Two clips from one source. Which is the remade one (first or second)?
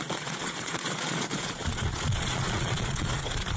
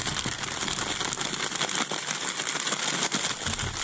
first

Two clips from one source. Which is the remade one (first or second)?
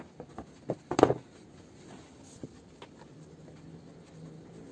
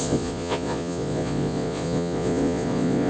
second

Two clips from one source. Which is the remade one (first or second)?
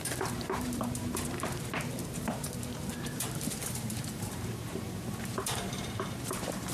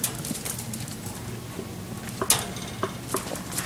first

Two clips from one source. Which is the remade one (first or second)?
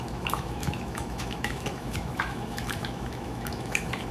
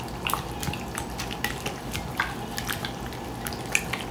first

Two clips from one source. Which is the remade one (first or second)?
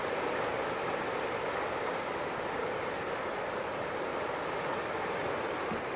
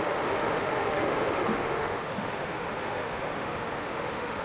second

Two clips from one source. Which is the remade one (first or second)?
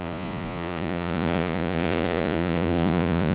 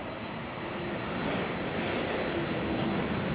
first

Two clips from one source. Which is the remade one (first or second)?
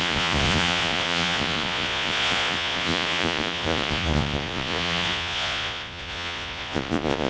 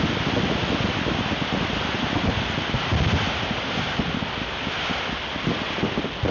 first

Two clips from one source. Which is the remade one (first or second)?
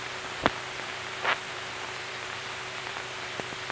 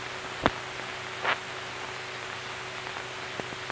first